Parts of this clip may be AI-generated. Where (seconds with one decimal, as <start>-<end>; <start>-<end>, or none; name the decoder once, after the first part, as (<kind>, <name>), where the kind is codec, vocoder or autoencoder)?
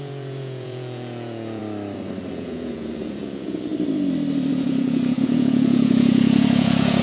0.0-1.6 (vocoder, Vocos); 2.3-3.7; 4.5-7.0